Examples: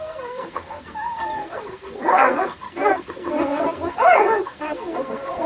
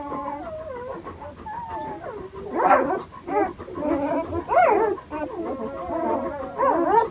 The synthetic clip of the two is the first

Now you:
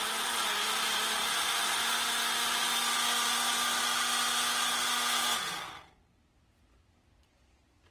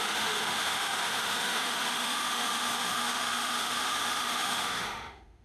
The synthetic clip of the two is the second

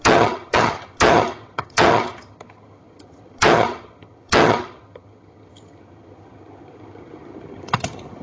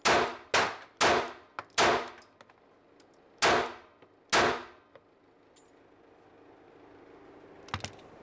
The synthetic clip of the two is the first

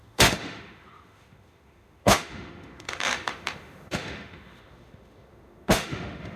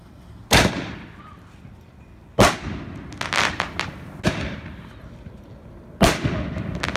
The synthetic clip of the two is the first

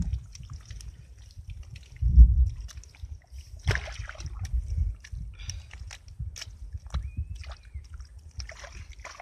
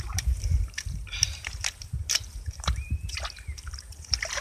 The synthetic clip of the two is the second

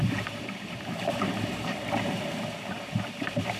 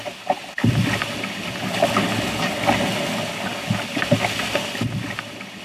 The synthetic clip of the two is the first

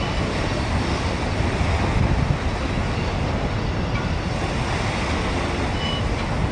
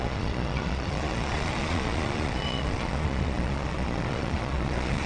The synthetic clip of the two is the second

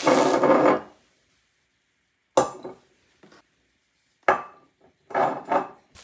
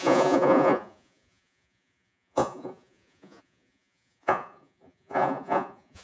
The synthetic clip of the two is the second